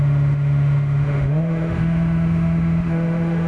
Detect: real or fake fake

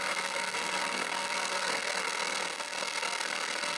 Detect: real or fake fake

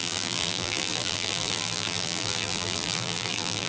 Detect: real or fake fake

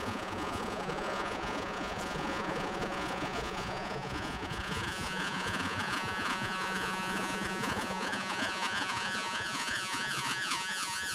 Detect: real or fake fake